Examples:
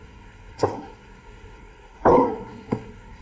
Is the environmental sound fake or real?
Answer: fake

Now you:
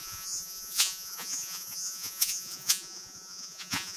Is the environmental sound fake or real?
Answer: fake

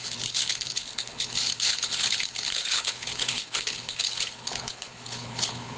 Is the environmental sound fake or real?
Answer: fake